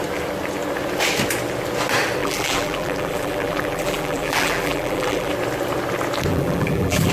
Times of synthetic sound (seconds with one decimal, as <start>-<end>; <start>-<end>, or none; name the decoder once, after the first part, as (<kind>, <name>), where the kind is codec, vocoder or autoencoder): 2.2-5.3 (vocoder, BigVGAN v2); 6.3-7.1